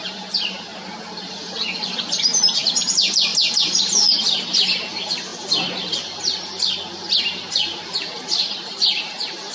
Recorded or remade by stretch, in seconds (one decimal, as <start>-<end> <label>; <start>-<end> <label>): 0.0-0.7 remade; 0.7-2.0 recorded; 2.0-3.3 remade; 3.3-4.4 recorded; 4.4-5.3 remade; 5.3-7.5 recorded; 7.5-9.5 remade